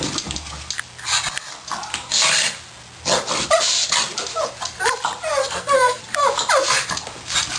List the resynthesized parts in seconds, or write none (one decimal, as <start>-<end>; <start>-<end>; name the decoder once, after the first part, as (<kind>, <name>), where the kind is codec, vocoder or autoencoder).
5.4-6.0 (codec, SNAC)